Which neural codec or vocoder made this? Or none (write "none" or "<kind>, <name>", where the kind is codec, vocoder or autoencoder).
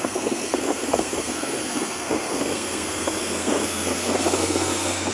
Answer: codec, SNAC